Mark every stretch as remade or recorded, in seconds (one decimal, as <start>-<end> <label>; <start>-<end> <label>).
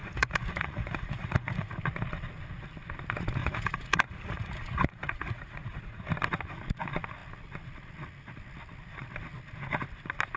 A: 0.0-1.7 remade; 1.7-3.4 recorded; 3.4-6.0 remade; 6.0-10.4 recorded